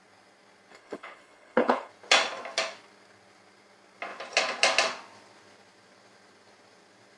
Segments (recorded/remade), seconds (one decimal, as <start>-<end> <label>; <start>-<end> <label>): 0.0-0.7 recorded; 0.7-1.9 remade; 1.9-7.2 recorded